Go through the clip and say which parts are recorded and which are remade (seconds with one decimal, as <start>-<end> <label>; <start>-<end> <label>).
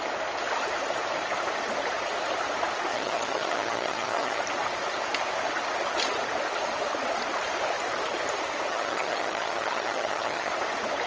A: 0.0-2.9 recorded; 2.9-4.4 remade; 4.4-8.7 recorded; 8.7-10.5 remade; 10.5-11.1 recorded